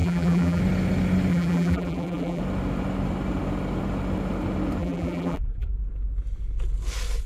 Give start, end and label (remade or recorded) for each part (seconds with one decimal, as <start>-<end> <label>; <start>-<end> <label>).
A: 0.0-0.6 remade; 0.6-1.3 recorded; 1.3-2.4 remade; 2.4-4.8 recorded; 4.8-5.7 remade; 5.7-7.3 recorded